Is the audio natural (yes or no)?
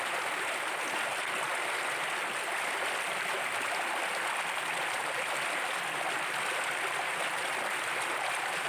yes